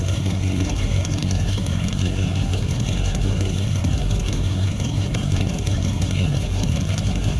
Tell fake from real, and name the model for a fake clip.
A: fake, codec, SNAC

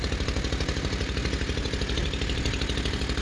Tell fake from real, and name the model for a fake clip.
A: real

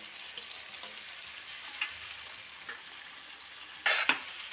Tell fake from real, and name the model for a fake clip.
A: real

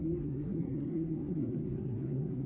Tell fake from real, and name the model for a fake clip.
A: fake, codec, SNAC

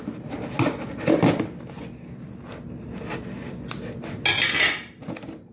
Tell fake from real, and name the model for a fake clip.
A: real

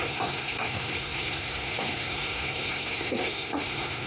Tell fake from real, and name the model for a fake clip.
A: fake, codec, SNAC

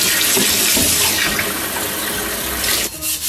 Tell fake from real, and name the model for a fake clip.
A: real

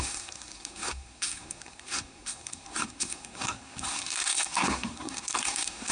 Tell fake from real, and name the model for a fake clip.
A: fake, codec, SNAC